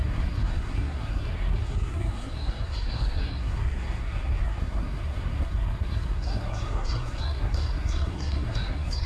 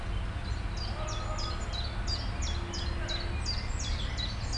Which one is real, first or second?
second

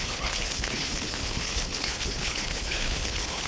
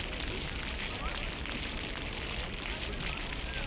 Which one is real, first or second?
second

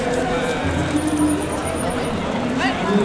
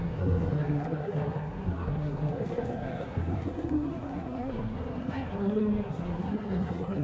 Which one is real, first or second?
first